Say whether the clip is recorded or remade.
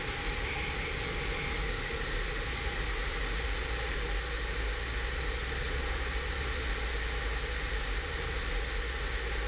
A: recorded